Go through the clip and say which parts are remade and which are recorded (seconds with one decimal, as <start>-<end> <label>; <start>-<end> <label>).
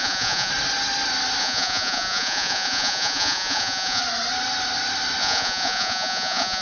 0.0-0.5 remade; 0.5-1.4 recorded; 1.4-4.0 remade; 4.0-5.2 recorded; 5.2-6.6 remade